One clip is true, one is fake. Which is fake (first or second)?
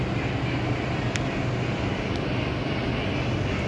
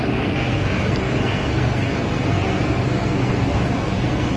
second